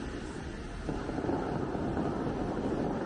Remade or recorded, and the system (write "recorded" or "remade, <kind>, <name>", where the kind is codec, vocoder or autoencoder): recorded